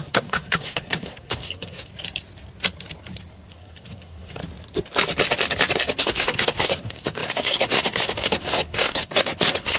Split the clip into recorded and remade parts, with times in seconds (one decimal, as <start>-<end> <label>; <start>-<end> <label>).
0.0-1.9 remade; 1.9-3.5 recorded; 3.5-4.4 remade; 4.4-6.0 recorded; 6.0-9.8 remade